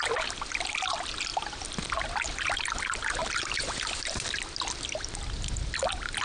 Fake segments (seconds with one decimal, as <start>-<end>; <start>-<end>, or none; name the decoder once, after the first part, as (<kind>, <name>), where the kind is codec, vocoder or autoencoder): none